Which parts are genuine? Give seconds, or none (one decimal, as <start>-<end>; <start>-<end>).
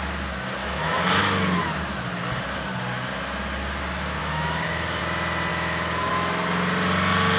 0.0-0.6; 1.2-4.2; 5.0-5.5; 6.1-7.4